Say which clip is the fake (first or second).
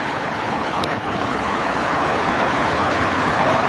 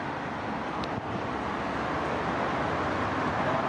first